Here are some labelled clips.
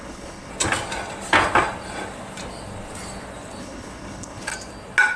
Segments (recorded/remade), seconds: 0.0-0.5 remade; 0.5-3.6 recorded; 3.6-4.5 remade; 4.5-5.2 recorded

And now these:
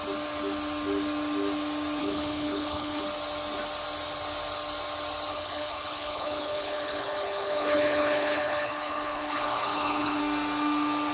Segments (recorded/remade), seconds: 0.0-2.0 recorded; 2.0-3.0 remade; 3.0-5.3 recorded; 5.3-10.2 remade; 10.2-11.1 recorded

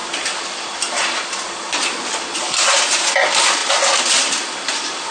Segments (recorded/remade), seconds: 0.0-5.1 recorded